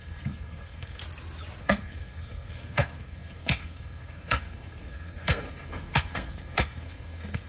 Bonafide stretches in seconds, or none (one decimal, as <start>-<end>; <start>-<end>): 1.0-1.6